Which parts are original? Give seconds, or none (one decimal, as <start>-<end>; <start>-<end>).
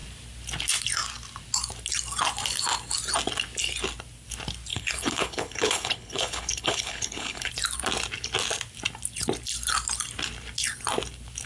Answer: 0.0-4.7; 7.5-11.5